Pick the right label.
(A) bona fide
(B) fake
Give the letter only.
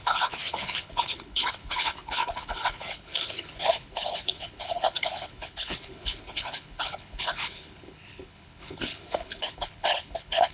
B